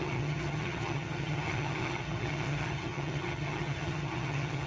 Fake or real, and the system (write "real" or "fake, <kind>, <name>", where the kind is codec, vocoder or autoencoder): fake, vocoder, HiFi-GAN